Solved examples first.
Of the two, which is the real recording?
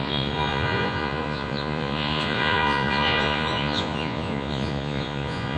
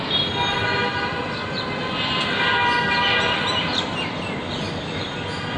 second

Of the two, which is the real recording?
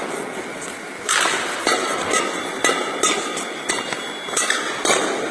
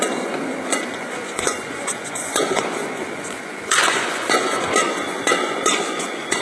first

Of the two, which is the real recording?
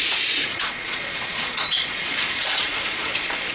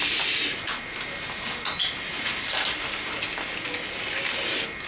second